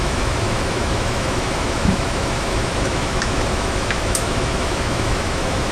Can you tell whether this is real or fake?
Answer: fake